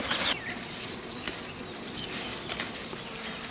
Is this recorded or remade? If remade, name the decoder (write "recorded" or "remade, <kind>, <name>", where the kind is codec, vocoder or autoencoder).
recorded